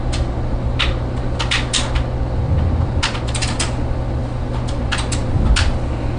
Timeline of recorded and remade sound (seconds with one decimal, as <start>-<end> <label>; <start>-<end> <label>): 0.0-6.2 recorded